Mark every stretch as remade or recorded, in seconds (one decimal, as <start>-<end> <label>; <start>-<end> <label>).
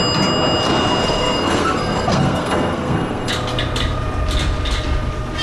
0.0-1.0 recorded; 1.0-3.3 remade; 3.3-5.4 recorded